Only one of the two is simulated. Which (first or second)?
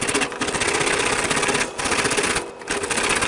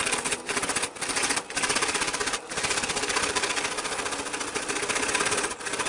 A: second